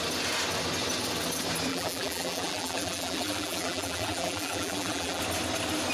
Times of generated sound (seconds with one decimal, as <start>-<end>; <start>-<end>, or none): 1.7-5.2